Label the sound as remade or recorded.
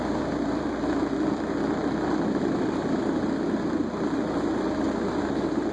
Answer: recorded